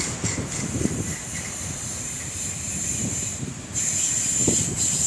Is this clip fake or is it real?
fake